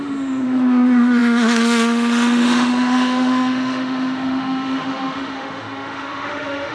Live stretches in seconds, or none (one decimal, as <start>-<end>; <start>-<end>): none